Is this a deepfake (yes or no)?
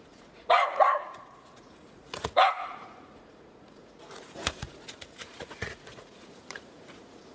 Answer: yes